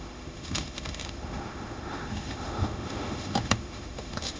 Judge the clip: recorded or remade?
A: remade